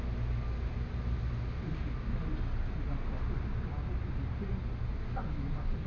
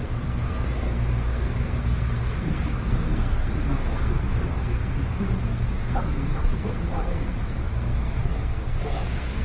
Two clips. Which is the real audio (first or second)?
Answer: first